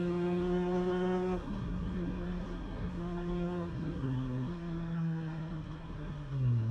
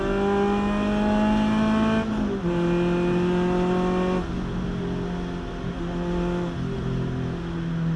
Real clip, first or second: second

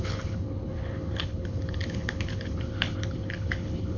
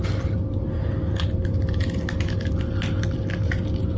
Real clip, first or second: second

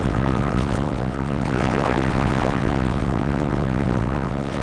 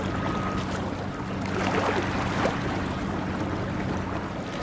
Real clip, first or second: second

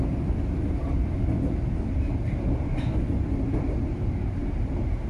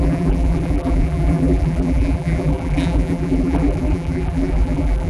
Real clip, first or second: first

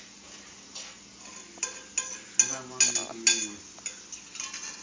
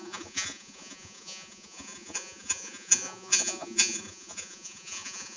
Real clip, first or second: first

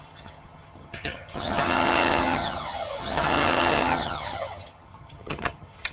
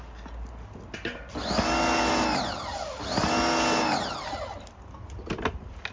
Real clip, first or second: second